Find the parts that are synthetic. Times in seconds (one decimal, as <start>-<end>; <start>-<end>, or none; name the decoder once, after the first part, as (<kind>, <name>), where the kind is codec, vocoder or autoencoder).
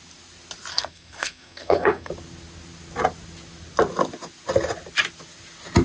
0.7-2.1 (codec, SNAC)